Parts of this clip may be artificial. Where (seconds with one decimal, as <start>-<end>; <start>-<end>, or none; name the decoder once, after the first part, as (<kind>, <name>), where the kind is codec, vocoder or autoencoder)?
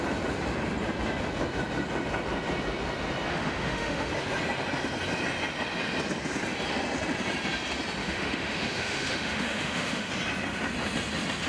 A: 3.3-4.1 (autoencoder, DAC-VAE); 8.0-10.1